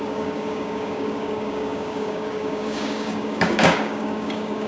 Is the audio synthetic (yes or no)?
yes